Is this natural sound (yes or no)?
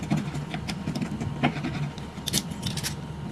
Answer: yes